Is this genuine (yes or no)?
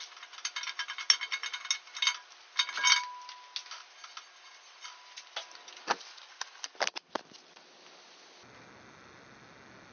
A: yes